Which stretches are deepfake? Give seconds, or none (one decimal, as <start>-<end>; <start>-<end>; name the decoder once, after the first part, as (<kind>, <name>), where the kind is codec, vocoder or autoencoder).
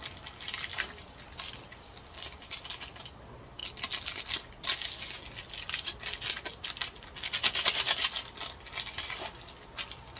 none